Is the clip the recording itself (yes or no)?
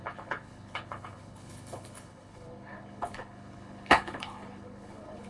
no